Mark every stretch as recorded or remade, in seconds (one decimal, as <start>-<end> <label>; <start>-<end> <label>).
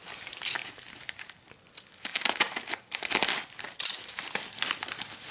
0.0-0.6 recorded; 0.6-1.1 remade; 1.1-2.1 recorded; 2.1-5.3 remade